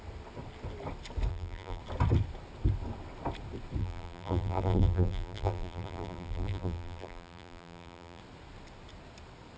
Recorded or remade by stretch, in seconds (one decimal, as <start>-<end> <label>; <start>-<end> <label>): 0.0-1.3 recorded; 1.3-1.8 remade; 1.8-3.8 recorded; 3.8-8.2 remade; 8.2-9.6 recorded